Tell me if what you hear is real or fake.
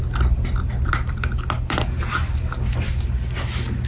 real